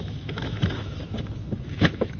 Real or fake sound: fake